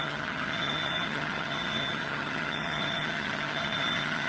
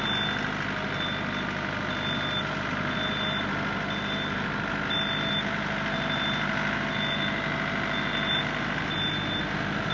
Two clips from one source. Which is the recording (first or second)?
second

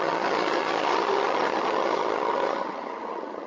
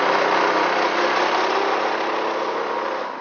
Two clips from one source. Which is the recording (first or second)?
second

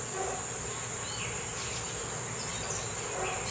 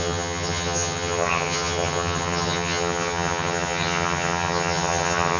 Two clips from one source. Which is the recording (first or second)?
first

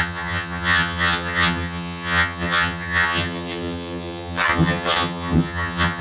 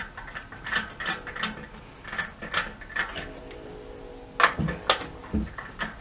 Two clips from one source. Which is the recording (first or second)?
second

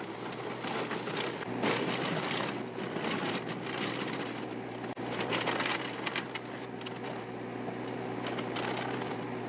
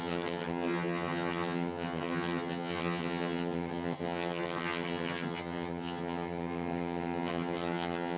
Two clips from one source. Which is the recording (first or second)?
first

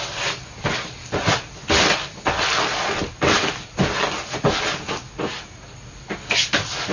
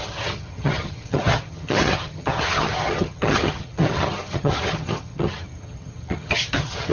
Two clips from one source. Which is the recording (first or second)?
first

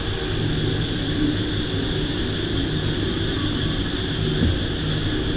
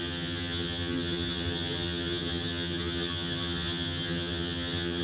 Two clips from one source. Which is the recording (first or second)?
first